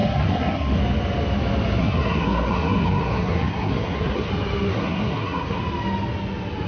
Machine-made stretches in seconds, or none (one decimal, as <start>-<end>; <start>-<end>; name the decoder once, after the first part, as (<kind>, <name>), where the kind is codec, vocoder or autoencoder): 0.0-0.8 (codec, SNAC); 1.8-4.3; 4.7-5.6